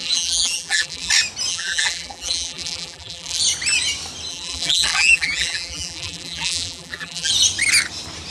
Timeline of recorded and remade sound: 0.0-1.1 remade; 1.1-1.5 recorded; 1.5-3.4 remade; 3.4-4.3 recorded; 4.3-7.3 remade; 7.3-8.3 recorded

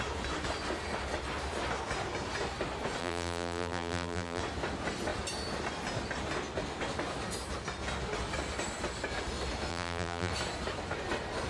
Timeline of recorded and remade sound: 0.0-3.0 recorded; 3.0-4.4 remade; 4.4-9.7 recorded; 9.7-10.3 remade; 10.3-11.5 recorded

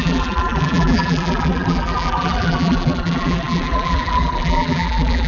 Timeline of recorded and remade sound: 0.0-5.3 remade

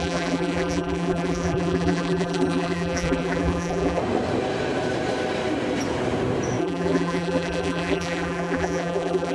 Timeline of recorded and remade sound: 0.0-4.0 remade; 4.0-6.6 recorded; 6.6-9.3 remade

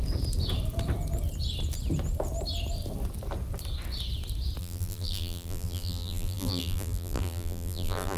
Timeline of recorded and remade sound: 0.0-4.6 recorded; 4.6-8.2 remade

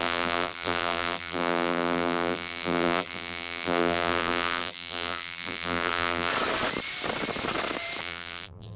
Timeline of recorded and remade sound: 0.0-6.3 remade; 6.3-8.0 recorded; 8.0-8.8 remade

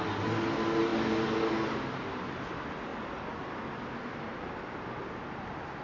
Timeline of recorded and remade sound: 0.0-5.8 recorded

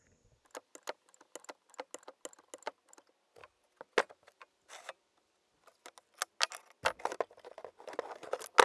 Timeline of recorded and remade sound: 0.0-8.6 recorded